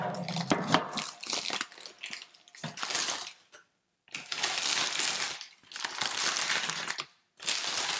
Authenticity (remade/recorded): recorded